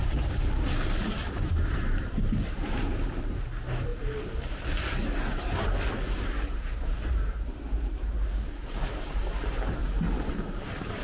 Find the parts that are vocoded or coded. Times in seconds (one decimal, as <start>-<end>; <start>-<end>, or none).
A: 0.0-3.9; 5.9-9.8; 10.3-11.0